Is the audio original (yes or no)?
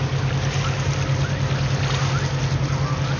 yes